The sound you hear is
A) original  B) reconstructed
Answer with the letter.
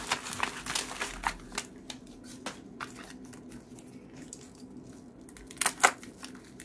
A